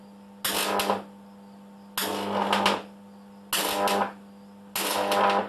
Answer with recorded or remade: recorded